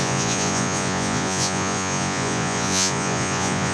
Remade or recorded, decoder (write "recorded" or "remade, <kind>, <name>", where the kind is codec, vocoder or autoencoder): remade, vocoder, Vocos